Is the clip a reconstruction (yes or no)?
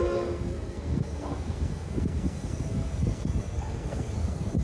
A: yes